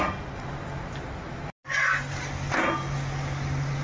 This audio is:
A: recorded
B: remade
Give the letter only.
A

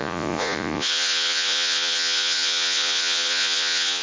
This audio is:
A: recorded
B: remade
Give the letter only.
B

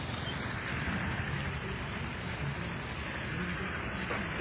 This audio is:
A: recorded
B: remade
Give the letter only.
A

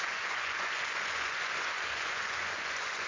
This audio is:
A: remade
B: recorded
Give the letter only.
A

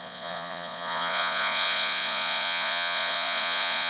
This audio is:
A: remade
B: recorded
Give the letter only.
A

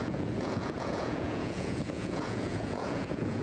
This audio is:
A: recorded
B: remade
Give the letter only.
B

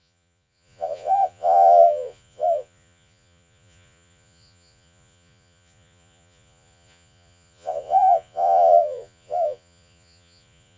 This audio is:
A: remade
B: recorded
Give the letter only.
A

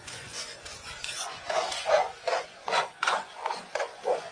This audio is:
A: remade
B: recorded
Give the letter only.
A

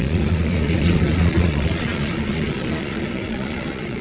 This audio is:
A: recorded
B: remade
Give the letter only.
B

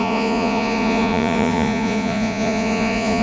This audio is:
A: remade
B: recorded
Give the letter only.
A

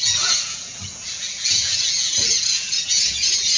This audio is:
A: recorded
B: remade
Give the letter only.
B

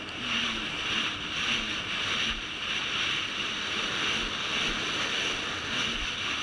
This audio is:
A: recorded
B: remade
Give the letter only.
A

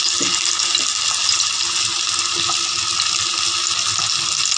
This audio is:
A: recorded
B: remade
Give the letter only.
A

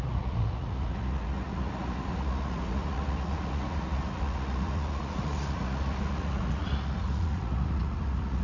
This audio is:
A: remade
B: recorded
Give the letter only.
A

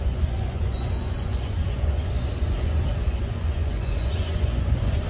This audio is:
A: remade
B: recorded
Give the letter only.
A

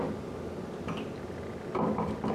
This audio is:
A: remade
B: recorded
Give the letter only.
B